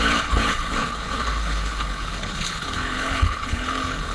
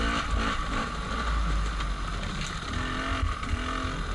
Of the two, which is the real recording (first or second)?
second